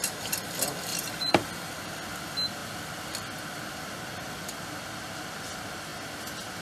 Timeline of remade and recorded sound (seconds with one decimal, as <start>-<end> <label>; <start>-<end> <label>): 0.0-0.9 recorded; 0.9-1.5 remade; 1.5-6.6 recorded